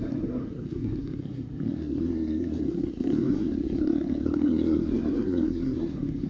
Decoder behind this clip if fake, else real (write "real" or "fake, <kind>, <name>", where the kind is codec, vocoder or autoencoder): fake, codec, SNAC